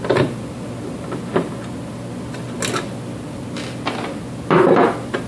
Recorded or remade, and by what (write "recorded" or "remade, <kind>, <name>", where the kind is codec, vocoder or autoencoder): recorded